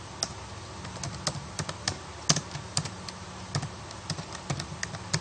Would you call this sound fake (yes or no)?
no